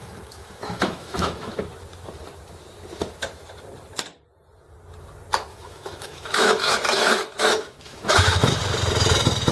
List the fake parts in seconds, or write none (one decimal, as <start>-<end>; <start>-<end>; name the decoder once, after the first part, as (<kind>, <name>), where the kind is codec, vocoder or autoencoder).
0.0-1.6 (autoencoder, DAC-VAE); 5.5-8.6